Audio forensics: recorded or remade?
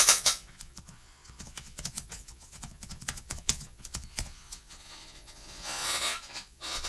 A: remade